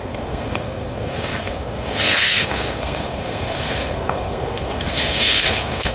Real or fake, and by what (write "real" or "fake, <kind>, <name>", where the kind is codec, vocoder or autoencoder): fake, codec, SNAC